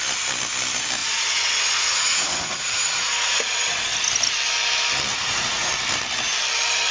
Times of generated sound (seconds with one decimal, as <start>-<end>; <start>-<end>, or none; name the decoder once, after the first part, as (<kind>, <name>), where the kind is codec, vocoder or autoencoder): 1.0-3.8 (vocoder, Vocos); 5.1-5.7